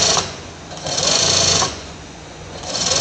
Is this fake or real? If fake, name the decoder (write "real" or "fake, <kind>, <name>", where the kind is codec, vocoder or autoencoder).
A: fake, vocoder, Vocos